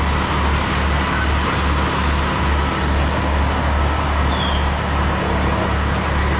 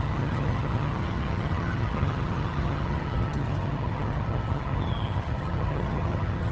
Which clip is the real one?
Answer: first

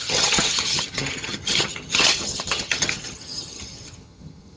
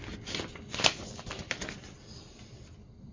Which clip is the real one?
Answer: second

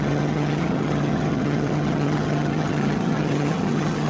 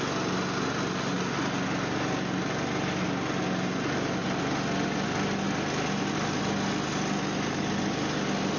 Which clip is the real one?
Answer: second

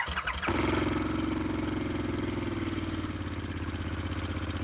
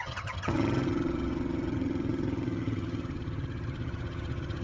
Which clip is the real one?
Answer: first